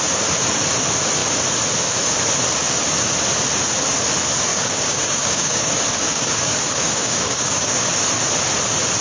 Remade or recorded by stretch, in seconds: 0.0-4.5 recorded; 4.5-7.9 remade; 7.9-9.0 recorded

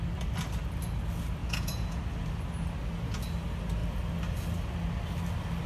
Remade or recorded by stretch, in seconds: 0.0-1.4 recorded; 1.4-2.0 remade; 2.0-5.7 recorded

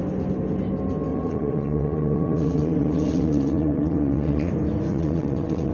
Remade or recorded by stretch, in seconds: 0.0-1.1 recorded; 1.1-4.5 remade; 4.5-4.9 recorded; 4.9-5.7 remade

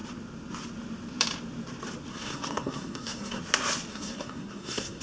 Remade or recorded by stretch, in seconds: 0.0-2.1 recorded; 2.1-3.4 remade; 3.4-3.9 recorded; 3.9-5.0 remade

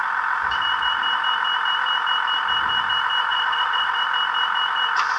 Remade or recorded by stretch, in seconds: 0.0-3.3 recorded; 3.3-4.0 remade; 4.0-5.2 recorded

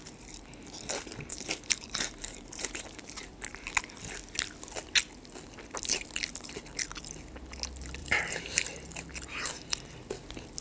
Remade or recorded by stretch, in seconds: 0.0-1.3 recorded; 1.3-3.7 remade; 3.7-8.0 recorded; 8.0-9.0 remade; 9.0-10.6 recorded